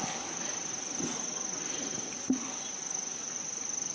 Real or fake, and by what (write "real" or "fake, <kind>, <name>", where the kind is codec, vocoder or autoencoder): real